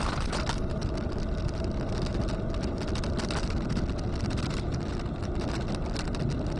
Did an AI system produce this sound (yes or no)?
no